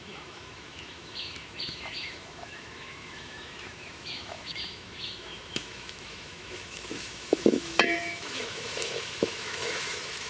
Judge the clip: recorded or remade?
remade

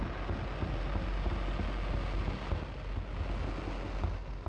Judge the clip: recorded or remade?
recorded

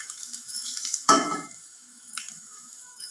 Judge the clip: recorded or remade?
remade